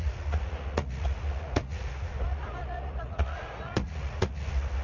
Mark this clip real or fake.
fake